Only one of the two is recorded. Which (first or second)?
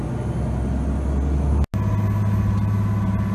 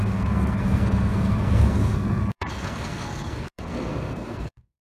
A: first